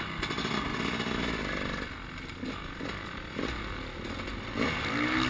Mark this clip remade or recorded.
recorded